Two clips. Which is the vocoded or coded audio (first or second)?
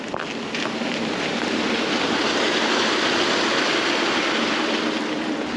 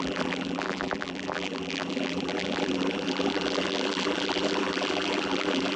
second